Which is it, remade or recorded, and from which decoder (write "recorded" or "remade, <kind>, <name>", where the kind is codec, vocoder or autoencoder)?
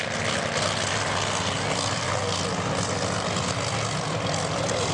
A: recorded